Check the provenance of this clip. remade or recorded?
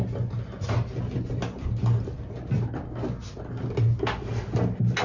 recorded